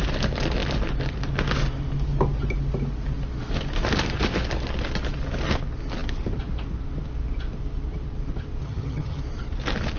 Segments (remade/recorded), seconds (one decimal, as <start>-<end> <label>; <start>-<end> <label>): 0.0-8.6 recorded; 8.6-9.2 remade; 9.2-10.0 recorded